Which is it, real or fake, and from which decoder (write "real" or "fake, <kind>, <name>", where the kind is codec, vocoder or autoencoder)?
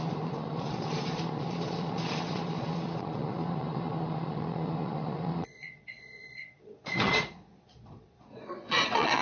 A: fake, vocoder, Vocos